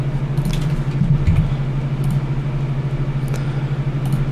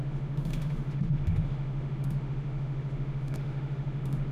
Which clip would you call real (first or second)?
first